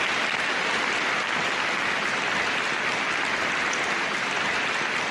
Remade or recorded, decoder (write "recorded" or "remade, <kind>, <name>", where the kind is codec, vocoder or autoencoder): recorded